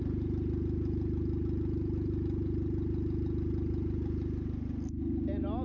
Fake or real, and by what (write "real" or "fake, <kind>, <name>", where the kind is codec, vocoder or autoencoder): real